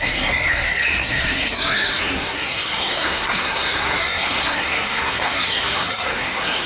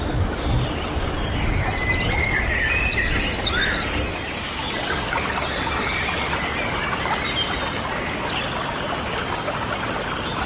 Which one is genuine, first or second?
second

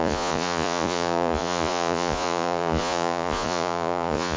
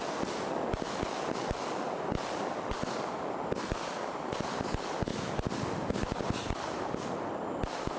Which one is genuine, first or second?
second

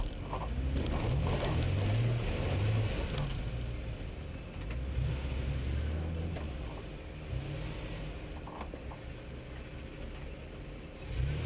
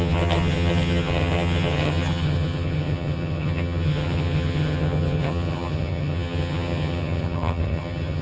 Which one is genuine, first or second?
first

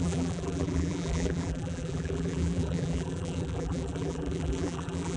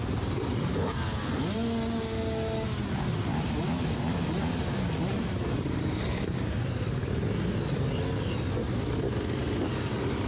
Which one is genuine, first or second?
second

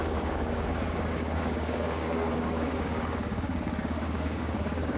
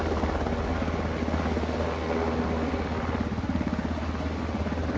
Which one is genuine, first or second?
second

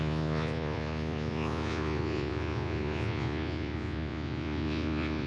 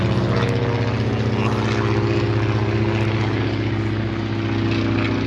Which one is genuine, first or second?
second